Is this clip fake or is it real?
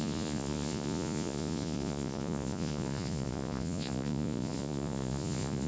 fake